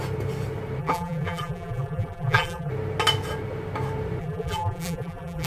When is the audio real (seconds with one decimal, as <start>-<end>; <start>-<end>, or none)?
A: 0.0-0.8; 2.7-4.2